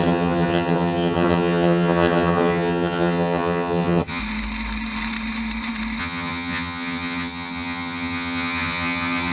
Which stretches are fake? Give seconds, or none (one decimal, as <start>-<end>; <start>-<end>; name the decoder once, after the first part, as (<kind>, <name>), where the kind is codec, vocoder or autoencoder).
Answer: 0.0-4.2 (vocoder, HiFi-GAN); 6.0-9.3